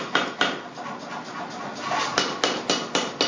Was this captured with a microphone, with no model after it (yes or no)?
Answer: yes